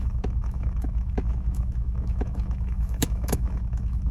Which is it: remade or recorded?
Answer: remade